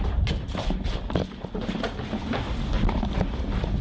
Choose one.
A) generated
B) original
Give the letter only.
B